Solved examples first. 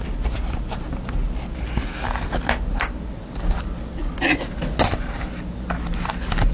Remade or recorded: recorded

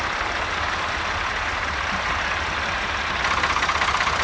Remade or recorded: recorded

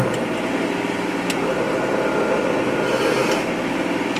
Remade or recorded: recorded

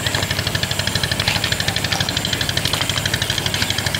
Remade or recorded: recorded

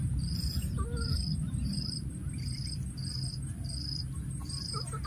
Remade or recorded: recorded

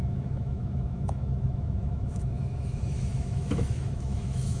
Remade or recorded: remade